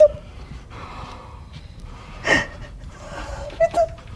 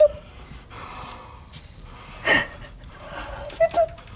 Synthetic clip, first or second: first